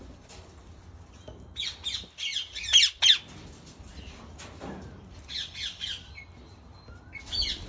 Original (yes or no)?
yes